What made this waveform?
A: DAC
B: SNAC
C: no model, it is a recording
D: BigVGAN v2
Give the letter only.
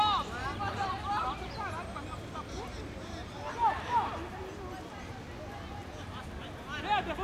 C